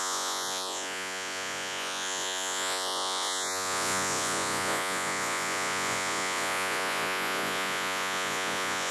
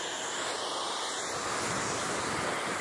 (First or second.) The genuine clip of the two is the second